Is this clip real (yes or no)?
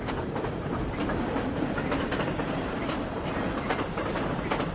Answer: no